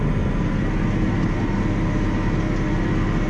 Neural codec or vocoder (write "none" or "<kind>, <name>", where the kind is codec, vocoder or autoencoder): none